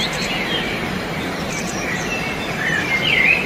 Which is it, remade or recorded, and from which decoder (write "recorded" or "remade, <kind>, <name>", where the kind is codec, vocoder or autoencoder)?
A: recorded